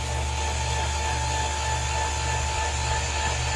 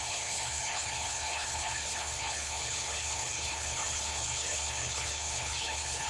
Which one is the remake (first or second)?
second